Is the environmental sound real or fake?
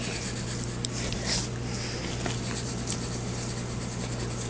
real